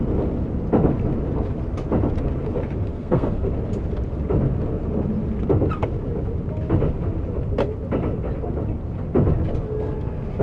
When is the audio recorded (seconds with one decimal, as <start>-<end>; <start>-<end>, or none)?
0.0-2.9; 3.5-10.4